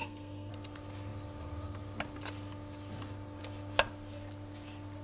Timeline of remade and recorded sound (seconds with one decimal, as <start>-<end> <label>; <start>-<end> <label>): 0.0-0.5 remade; 0.5-5.0 recorded